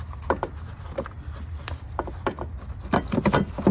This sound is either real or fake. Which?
real